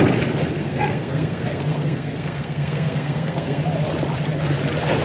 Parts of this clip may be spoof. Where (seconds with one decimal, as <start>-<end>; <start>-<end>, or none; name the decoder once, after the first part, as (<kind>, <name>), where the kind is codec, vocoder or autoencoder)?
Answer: 0.6-3.6 (codec, SNAC)